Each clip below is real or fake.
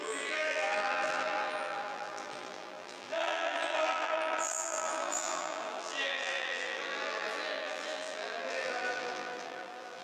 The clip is fake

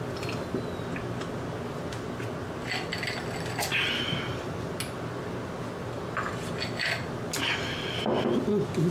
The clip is real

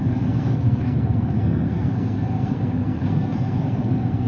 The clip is fake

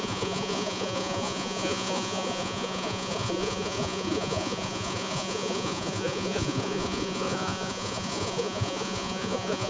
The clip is fake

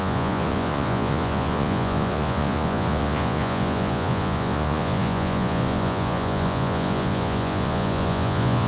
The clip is fake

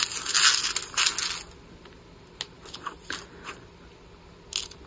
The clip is real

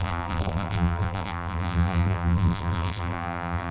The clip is fake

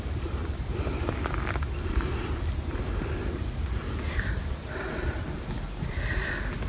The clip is real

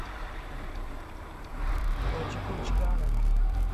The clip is fake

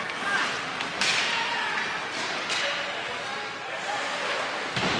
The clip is real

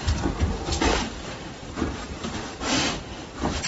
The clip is fake